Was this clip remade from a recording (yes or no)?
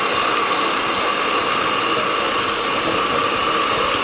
no